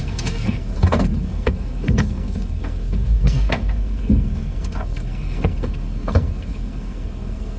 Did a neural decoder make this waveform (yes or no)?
yes